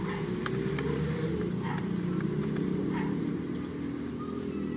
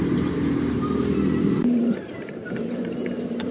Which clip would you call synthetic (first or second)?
second